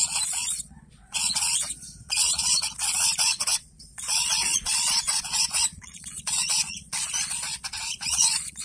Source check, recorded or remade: remade